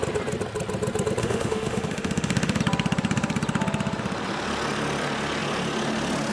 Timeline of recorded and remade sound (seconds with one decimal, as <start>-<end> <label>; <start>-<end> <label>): 0.0-1.2 recorded; 1.2-2.6 remade; 2.6-6.3 recorded

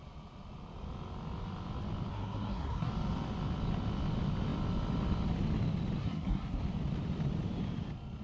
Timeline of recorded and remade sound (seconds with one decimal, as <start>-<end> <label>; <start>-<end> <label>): 0.0-2.1 recorded; 2.1-2.9 remade; 2.9-6.0 recorded; 6.0-6.6 remade; 6.6-8.2 recorded

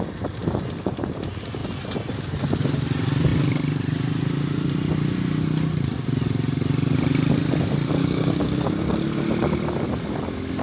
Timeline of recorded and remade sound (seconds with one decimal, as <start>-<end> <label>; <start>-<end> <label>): 0.0-8.0 recorded; 8.0-8.9 remade; 8.9-10.6 recorded

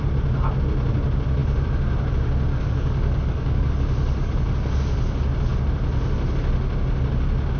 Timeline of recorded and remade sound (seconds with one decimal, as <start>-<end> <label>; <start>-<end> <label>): 0.0-2.5 recorded; 2.5-4.3 remade; 4.3-7.6 recorded

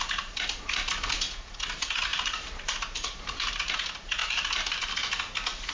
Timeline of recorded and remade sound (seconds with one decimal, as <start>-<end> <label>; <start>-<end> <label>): 0.0-2.1 recorded; 2.1-3.7 remade; 3.7-4.2 recorded; 4.2-4.9 remade; 4.9-5.7 recorded

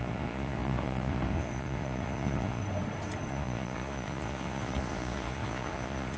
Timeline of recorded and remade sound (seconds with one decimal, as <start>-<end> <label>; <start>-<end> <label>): 0.0-2.6 remade; 2.6-3.3 recorded; 3.3-6.2 remade